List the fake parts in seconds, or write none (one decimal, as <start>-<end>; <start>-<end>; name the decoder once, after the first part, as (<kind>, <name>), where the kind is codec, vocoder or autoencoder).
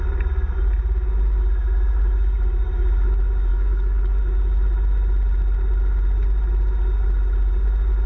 3.5-4.2 (codec, DAC)